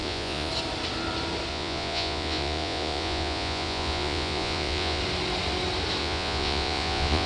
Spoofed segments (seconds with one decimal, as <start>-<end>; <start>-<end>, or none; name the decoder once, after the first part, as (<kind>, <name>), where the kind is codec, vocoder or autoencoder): 0.0-0.5 (vocoder, Vocos); 1.5-5.0; 6.0-7.3